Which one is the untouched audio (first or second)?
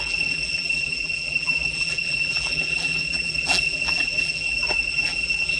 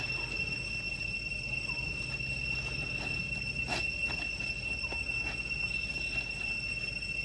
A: second